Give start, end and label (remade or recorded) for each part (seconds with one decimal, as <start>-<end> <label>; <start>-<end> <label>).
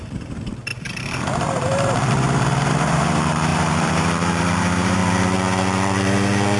0.0-5.0 remade; 5.0-6.6 recorded